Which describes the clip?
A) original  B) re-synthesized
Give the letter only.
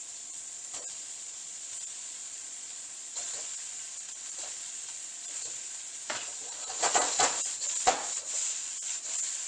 B